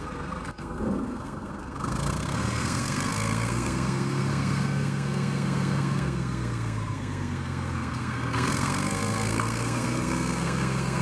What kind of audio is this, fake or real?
fake